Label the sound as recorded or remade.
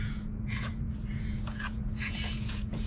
remade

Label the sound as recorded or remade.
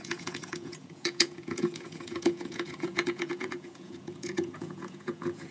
remade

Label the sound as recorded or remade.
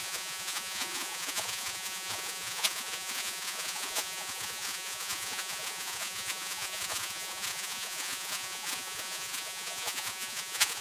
remade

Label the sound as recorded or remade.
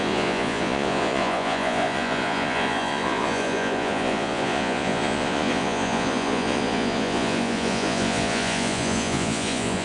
remade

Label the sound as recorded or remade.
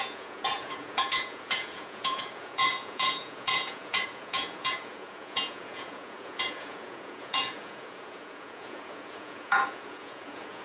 remade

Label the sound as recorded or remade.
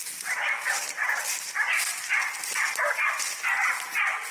recorded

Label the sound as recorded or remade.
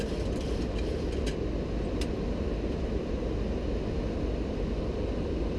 recorded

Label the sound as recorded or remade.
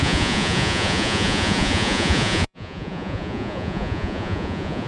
remade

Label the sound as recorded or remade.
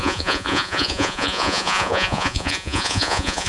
remade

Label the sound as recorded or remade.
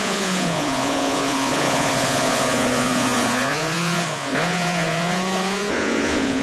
remade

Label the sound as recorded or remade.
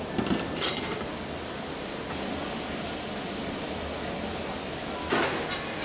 recorded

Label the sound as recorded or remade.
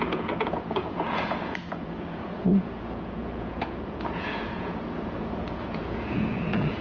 remade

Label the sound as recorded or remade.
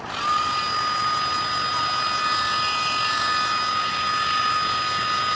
recorded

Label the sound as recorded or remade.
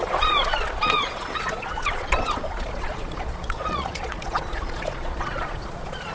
remade